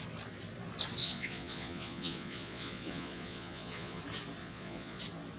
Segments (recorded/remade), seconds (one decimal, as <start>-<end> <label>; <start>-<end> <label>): 0.0-1.0 recorded; 1.0-4.0 remade; 4.0-4.4 recorded; 4.4-5.0 remade; 5.0-5.4 recorded